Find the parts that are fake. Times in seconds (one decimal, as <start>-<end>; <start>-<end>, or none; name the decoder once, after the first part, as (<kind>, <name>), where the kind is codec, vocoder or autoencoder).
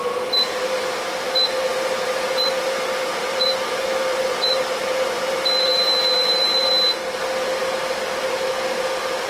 1.7-6.7 (vocoder, BigVGAN v2)